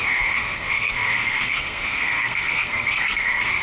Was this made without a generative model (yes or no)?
no